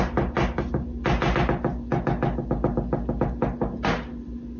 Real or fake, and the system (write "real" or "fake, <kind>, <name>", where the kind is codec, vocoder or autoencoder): real